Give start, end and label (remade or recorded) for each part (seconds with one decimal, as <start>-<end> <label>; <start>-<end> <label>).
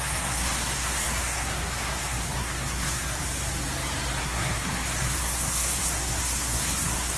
0.0-3.2 remade; 3.2-4.2 recorded; 4.2-7.2 remade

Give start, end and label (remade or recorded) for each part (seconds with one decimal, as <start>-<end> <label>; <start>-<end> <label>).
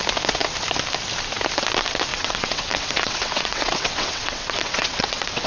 0.0-2.1 recorded; 2.1-5.5 remade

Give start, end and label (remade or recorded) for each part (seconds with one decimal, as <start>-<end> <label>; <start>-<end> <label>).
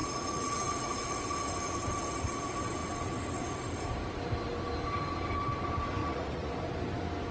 0.0-1.1 remade; 1.1-6.0 recorded; 6.0-6.5 remade; 6.5-7.3 recorded